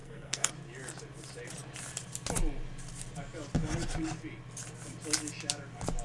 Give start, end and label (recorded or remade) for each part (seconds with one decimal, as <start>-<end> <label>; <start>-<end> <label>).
0.0-0.5 remade; 0.5-6.0 recorded